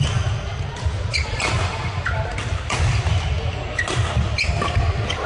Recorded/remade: recorded